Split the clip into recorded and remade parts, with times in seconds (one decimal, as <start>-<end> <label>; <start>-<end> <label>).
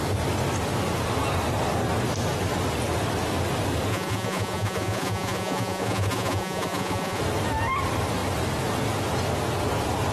0.0-3.9 recorded; 3.9-7.2 remade; 7.2-10.1 recorded